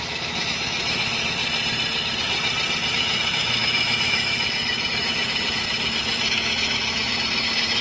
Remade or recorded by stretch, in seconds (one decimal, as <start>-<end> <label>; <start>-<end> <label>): 0.0-1.4 remade; 1.4-2.9 recorded; 2.9-7.8 remade